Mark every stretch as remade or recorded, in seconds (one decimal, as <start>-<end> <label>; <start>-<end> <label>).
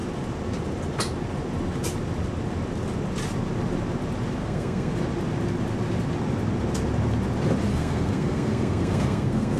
0.0-4.4 recorded; 4.4-4.9 remade; 4.9-7.7 recorded; 7.7-9.6 remade